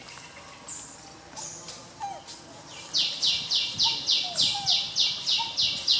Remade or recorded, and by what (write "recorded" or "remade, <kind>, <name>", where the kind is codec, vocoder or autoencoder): recorded